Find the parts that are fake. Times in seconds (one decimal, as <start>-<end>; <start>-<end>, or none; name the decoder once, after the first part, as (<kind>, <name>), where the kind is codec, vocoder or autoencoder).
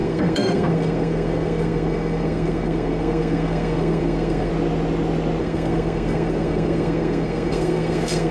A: 0.0-4.5 (codec, SNAC); 5.4-8.3